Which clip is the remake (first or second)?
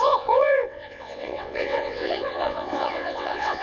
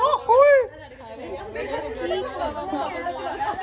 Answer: first